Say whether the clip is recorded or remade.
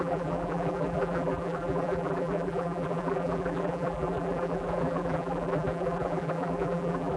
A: remade